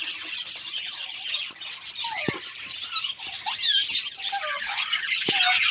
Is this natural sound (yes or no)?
yes